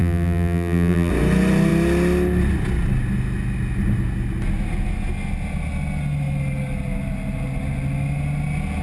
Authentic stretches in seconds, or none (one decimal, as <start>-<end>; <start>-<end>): 1.1-8.8